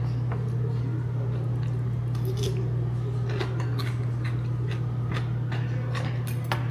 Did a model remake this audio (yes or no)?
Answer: no